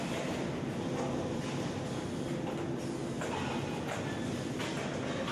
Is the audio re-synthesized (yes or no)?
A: no